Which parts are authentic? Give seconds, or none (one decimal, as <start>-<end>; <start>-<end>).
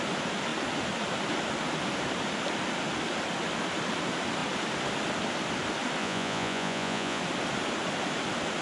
0.0-6.0; 7.2-8.6